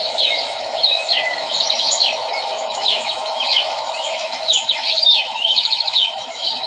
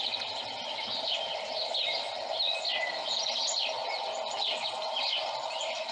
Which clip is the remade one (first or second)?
first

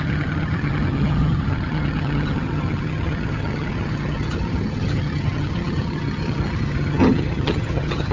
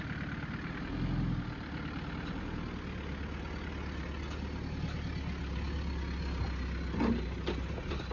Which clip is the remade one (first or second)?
first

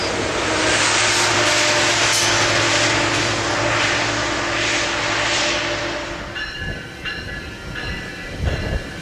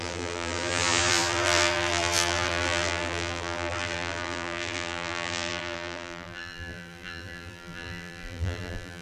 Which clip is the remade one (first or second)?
second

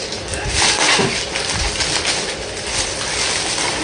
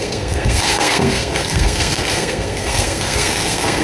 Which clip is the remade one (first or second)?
second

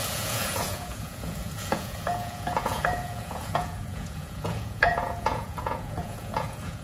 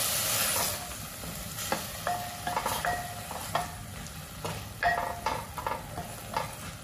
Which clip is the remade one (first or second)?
first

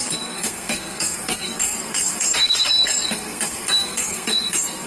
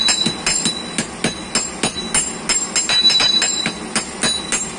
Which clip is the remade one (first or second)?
first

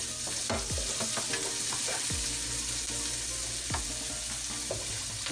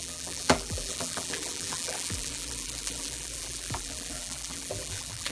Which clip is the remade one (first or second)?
second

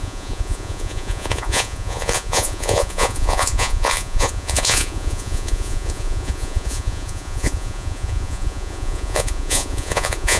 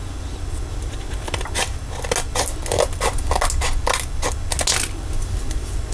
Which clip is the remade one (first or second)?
first